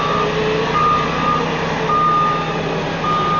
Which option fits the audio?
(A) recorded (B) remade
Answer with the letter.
A